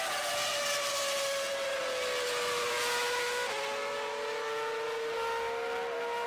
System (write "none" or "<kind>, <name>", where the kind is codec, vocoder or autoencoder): none